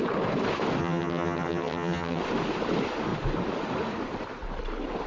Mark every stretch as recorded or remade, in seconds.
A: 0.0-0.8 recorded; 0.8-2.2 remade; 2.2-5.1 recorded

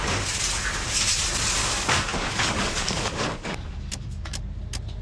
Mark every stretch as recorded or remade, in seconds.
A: 0.0-1.6 recorded; 1.6-4.6 remade; 4.6-5.0 recorded

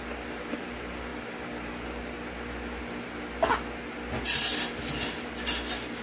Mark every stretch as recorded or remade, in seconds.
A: 0.0-6.0 recorded

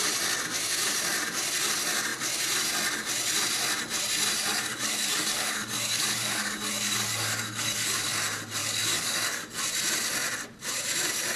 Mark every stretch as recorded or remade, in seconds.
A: 0.0-4.5 recorded; 4.5-8.1 remade; 8.1-8.6 recorded; 8.6-9.6 remade; 9.6-11.4 recorded

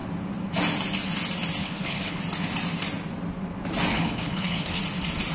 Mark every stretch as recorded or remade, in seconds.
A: 0.0-1.6 recorded; 1.6-2.2 remade; 2.2-3.9 recorded; 3.9-4.8 remade; 4.8-5.3 recorded

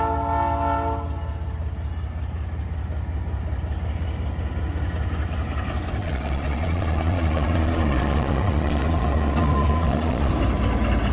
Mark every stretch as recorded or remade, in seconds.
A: 0.0-6.0 recorded; 6.0-10.3 remade; 10.3-11.1 recorded

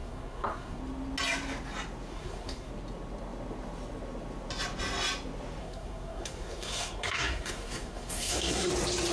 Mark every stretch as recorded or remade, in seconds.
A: 0.0-0.8 remade; 0.8-2.1 recorded; 2.1-2.7 remade; 2.7-5.6 recorded; 5.6-8.7 remade; 8.7-9.1 recorded

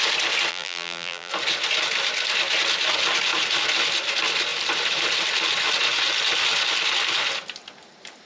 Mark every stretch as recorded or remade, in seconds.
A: 0.0-0.5 recorded; 0.5-1.3 remade; 1.3-8.3 recorded